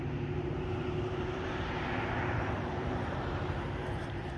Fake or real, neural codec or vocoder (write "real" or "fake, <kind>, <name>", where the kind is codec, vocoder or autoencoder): fake, vocoder, BigVGAN v2